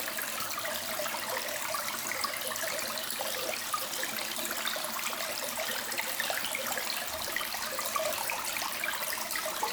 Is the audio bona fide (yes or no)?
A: yes